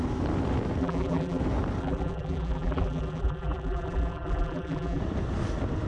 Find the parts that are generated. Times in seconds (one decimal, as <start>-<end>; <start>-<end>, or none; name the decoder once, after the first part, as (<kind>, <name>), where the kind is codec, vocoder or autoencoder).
0.8-1.4 (vocoder, BigVGAN v2); 1.8-5.0